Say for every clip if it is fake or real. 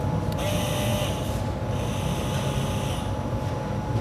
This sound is real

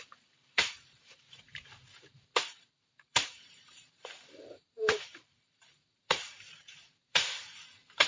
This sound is fake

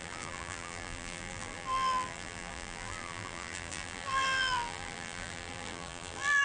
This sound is fake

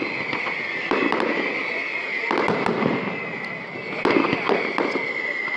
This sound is real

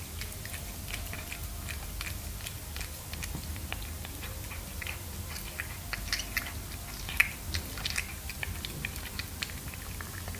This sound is real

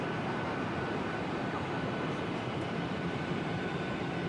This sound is fake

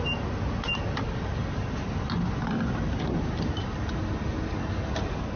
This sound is real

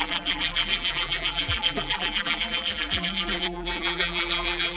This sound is fake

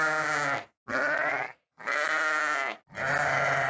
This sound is real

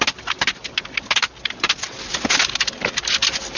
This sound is real